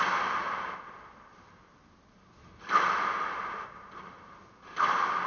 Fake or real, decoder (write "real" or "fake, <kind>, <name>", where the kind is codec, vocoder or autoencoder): real